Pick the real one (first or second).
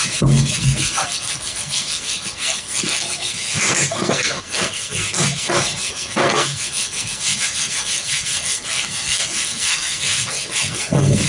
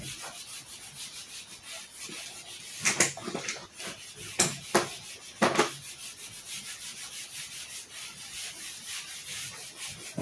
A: second